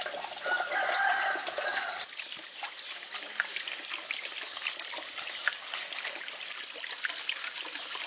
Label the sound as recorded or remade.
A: recorded